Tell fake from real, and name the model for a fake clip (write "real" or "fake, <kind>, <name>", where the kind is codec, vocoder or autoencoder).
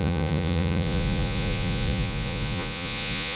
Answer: fake, vocoder, Vocos